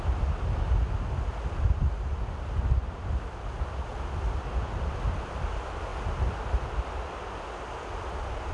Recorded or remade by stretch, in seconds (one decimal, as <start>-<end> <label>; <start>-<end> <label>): 0.0-8.5 recorded